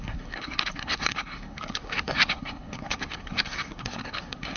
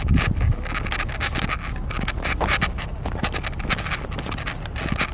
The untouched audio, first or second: second